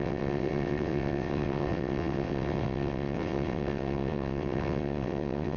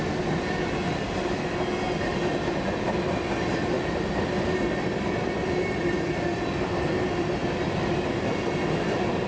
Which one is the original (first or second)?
second